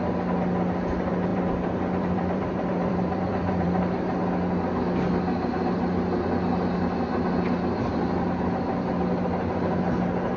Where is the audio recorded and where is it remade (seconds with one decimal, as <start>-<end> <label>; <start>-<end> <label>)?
0.0-1.3 recorded; 1.3-3.8 remade; 3.8-10.4 recorded